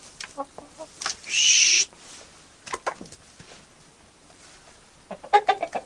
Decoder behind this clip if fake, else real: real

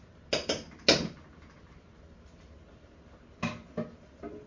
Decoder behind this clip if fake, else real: real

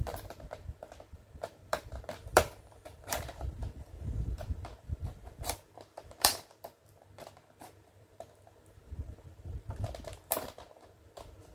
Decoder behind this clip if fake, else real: fake, vocoder, BigVGAN v2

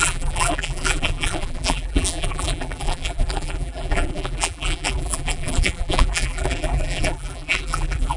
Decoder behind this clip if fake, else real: fake, vocoder, BigVGAN v2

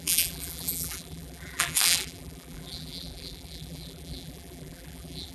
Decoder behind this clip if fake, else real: fake, vocoder, BigVGAN v2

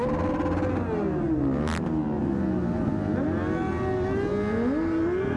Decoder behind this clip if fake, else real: real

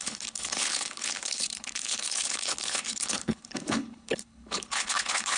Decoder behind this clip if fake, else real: fake, codec, HILCodec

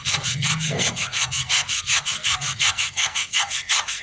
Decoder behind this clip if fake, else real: fake, codec, SNAC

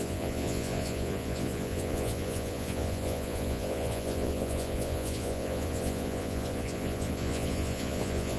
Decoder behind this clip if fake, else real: fake, vocoder, Vocos